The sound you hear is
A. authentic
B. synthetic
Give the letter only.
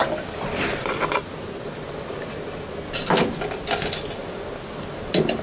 A